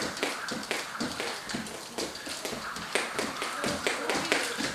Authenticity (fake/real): real